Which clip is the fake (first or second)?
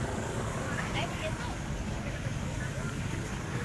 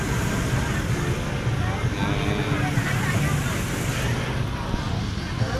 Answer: first